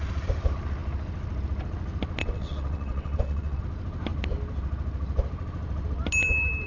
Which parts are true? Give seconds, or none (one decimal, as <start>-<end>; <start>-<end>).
0.0-2.2; 3.6-6.7